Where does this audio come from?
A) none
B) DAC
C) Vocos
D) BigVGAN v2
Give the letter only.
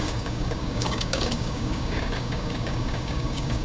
B